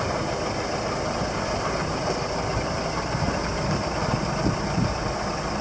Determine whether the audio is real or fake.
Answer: real